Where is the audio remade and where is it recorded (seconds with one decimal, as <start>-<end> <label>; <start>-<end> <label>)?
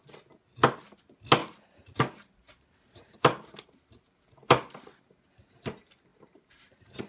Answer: 0.0-1.4 recorded; 1.4-5.0 remade; 5.0-6.1 recorded; 6.1-7.1 remade